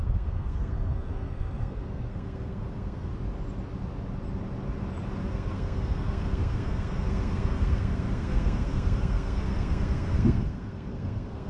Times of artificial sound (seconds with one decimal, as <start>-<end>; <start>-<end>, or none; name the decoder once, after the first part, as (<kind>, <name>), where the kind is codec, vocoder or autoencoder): 0.0-3.1 (codec, SNAC); 5.3-11.5